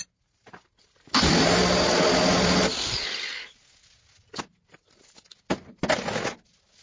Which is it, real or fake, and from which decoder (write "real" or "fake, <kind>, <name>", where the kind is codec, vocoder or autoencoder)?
real